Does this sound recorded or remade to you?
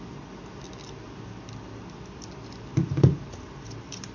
recorded